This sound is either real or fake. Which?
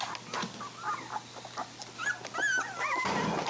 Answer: real